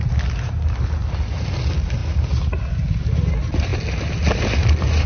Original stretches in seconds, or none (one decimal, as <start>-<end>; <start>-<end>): 0.0-5.1